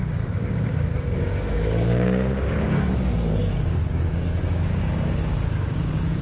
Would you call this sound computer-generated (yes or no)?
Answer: yes